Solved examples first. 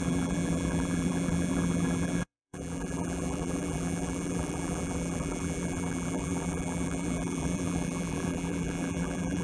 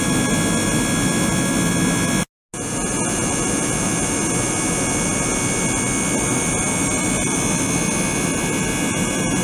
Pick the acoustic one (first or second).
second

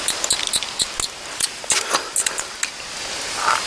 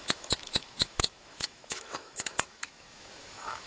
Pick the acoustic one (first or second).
first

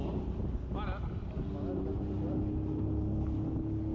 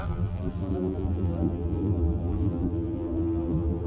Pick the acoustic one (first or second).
first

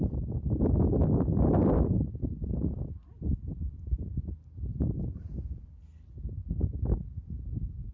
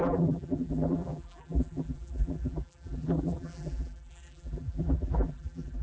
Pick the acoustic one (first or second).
first